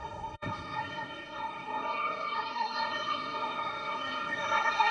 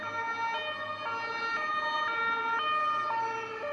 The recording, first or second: second